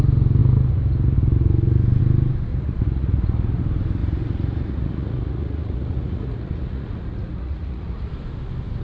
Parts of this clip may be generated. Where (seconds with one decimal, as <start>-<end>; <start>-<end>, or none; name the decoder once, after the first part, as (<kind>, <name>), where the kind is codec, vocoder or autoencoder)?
2.5-3.6 (vocoder, Vocos); 4.0-8.1